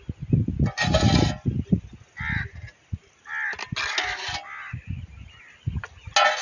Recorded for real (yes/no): yes